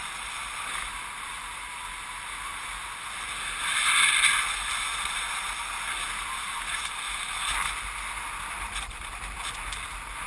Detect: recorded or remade recorded